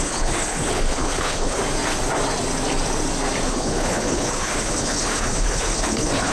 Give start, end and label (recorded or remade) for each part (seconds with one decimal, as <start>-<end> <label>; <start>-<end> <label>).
0.0-1.6 remade; 1.6-3.5 recorded; 3.5-6.3 remade

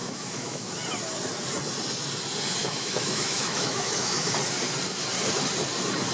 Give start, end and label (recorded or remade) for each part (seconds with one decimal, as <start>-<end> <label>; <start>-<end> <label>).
0.0-0.7 remade; 0.7-2.6 recorded; 2.6-4.3 remade; 4.3-6.1 recorded

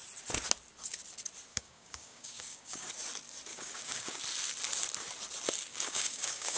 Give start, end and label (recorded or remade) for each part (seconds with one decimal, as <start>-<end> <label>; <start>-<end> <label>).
0.0-1.5 recorded; 1.5-2.9 remade; 2.9-3.5 recorded; 3.5-4.2 remade; 4.2-5.7 recorded; 5.7-6.6 remade